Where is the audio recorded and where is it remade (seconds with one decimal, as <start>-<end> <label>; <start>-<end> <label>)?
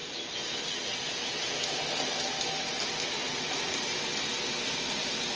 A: 0.0-5.4 recorded